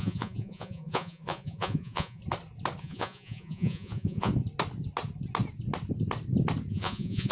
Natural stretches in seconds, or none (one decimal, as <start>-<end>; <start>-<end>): 2.2-2.8; 4.3-6.7